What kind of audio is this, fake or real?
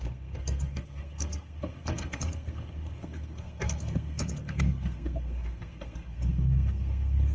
fake